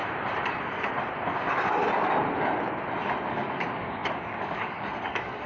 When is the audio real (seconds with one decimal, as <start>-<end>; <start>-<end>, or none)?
0.0-3.3